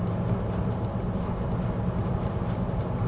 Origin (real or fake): real